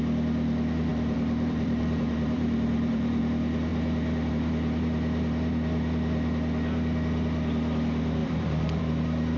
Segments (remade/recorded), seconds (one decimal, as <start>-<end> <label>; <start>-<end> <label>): 0.0-0.9 recorded; 0.9-3.2 remade; 3.2-8.2 recorded; 8.2-8.8 remade; 8.8-9.4 recorded